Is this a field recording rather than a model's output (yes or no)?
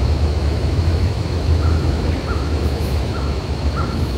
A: no